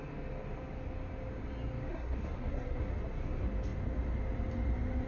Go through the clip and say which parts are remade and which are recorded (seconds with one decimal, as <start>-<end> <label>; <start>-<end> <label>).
0.0-1.9 recorded; 1.9-2.8 remade; 2.8-5.1 recorded